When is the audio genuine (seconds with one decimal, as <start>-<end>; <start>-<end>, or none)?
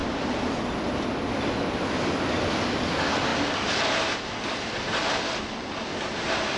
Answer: 0.0-3.3; 5.9-6.6